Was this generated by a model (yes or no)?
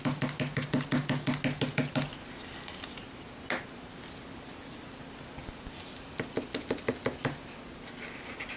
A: no